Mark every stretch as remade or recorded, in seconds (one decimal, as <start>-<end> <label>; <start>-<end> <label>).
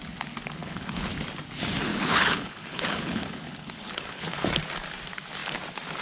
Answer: 0.0-0.6 recorded; 0.6-1.1 remade; 1.1-1.9 recorded; 1.9-4.5 remade; 4.5-6.0 recorded